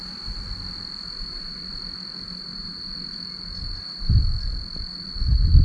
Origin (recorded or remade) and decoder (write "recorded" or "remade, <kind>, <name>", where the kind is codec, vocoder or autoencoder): recorded